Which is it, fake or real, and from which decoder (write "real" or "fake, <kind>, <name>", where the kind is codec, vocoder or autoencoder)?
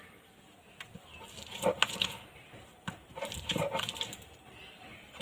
real